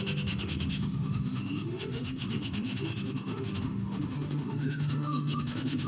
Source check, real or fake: fake